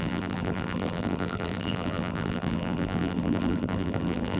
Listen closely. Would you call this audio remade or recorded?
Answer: remade